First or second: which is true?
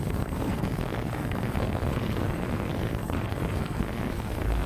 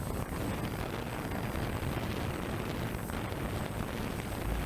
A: second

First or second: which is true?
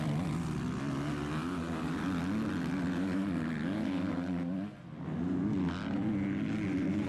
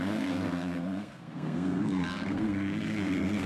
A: first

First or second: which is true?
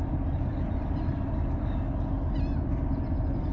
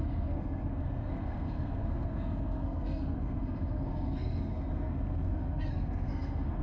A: first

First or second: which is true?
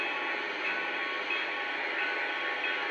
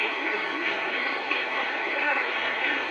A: first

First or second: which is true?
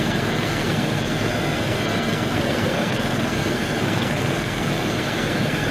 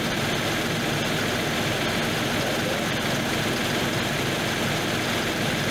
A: second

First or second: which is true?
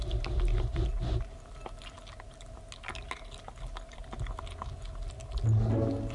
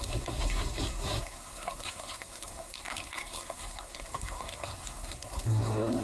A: first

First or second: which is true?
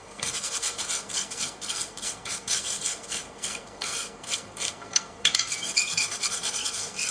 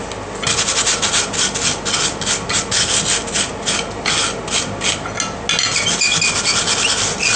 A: second